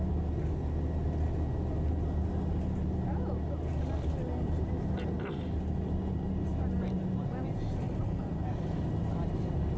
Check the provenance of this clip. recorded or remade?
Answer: recorded